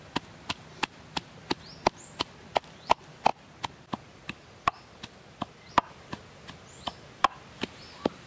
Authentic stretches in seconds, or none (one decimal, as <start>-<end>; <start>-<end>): 0.0-8.3